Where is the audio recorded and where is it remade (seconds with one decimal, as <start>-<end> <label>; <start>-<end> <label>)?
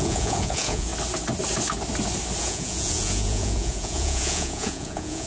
0.0-0.9 remade; 0.9-2.4 recorded; 2.4-5.3 remade